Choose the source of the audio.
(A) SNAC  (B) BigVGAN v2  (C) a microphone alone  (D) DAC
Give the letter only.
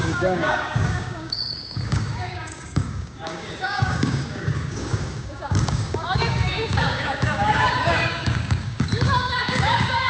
D